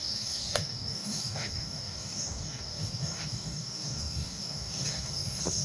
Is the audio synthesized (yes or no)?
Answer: yes